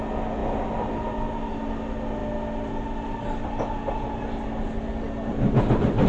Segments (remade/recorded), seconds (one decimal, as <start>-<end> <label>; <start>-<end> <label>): 0.0-6.1 recorded